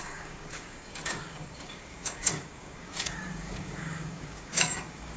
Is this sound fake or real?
fake